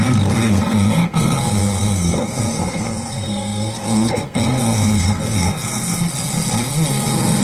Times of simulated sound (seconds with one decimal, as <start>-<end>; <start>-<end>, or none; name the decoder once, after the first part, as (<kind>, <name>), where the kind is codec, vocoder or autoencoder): 0.0-6.0 (codec, SNAC); 6.9-7.4